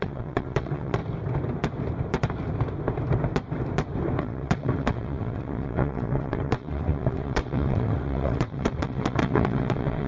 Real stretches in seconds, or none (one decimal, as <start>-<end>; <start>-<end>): 1.0-4.2